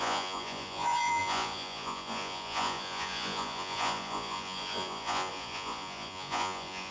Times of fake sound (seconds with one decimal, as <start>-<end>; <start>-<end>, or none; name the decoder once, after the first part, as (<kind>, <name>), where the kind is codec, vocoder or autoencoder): 0.0-6.9 (vocoder, Vocos)